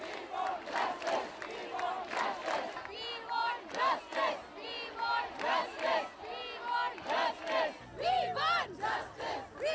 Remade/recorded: recorded